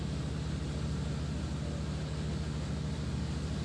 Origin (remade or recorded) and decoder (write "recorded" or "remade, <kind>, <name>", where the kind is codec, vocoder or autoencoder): recorded